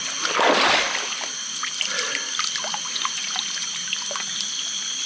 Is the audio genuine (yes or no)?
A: yes